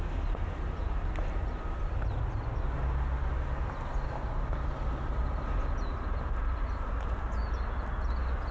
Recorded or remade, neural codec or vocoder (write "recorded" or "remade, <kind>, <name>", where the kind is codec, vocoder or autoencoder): recorded